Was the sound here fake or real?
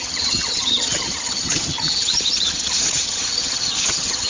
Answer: fake